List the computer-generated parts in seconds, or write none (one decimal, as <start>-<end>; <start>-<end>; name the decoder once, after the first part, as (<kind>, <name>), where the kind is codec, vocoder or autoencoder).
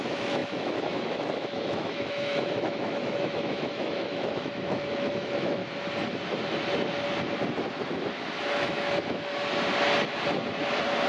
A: 0.0-5.6 (autoencoder, DAC-VAE); 8.4-9.3